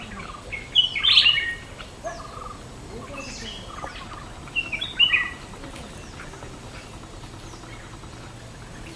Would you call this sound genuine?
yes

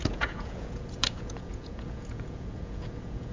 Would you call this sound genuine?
no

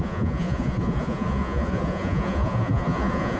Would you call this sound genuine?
no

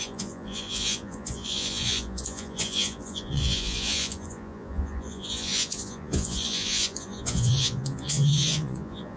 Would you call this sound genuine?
no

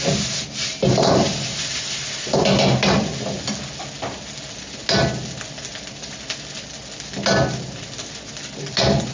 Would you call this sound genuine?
yes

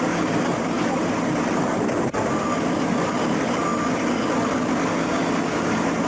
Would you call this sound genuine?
yes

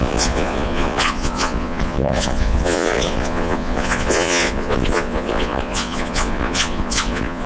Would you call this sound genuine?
no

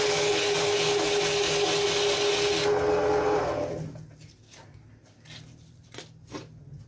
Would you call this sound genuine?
yes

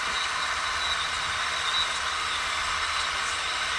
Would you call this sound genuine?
yes